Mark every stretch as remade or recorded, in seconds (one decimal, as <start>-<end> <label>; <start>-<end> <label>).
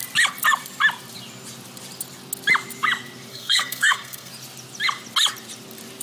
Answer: 0.0-3.3 recorded; 3.3-4.3 remade; 4.3-6.0 recorded